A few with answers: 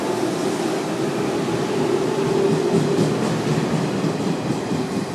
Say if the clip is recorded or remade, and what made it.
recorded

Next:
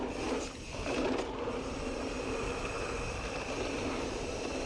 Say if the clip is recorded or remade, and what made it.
recorded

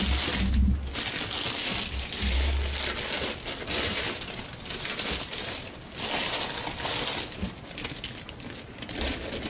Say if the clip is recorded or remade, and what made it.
recorded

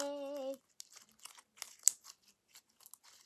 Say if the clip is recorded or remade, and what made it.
recorded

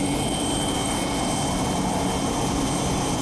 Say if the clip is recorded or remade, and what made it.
recorded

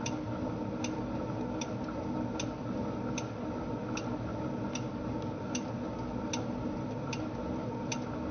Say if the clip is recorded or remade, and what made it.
recorded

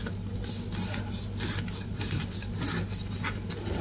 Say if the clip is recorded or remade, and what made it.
recorded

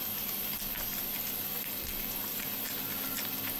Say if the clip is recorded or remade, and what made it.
recorded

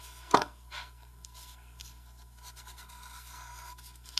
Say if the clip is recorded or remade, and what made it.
remade, codec, SNAC